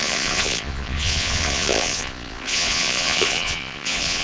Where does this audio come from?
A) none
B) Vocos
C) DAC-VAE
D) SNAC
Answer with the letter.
B